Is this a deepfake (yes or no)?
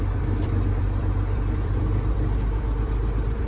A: yes